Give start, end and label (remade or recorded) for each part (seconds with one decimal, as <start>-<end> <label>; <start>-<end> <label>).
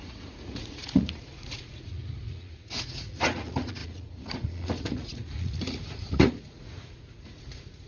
0.0-7.9 remade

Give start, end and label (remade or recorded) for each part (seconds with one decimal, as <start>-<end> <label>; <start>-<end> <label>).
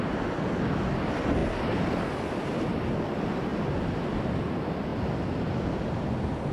0.0-6.5 recorded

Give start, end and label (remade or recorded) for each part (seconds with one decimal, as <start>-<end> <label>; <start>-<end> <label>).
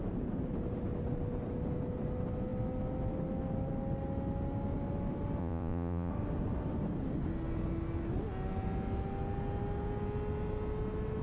0.0-5.4 recorded; 5.4-6.1 remade; 6.1-11.2 recorded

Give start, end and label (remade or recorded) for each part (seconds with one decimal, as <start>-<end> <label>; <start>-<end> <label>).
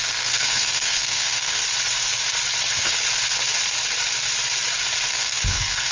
0.0-1.6 remade; 1.6-5.1 recorded; 5.1-5.9 remade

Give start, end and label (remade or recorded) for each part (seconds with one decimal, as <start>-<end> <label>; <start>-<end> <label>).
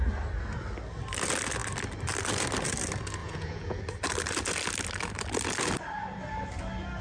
0.0-3.2 recorded; 3.2-3.8 remade; 3.8-7.0 recorded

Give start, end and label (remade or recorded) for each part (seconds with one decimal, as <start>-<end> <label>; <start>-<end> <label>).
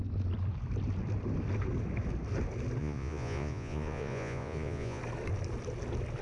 0.0-2.8 recorded; 2.8-5.0 remade; 5.0-6.2 recorded